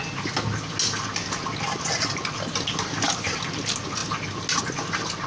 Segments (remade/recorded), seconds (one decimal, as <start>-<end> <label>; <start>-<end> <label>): 0.0-5.3 recorded